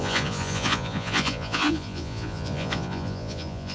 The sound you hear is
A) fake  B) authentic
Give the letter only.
A